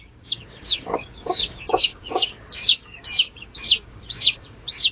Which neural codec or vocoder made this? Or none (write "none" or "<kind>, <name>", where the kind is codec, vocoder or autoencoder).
codec, DAC